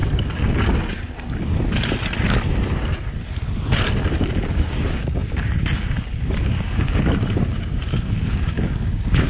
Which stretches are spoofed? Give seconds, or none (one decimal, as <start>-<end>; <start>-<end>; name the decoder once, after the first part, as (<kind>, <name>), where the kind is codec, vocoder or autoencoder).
4.1-9.3 (codec, DAC)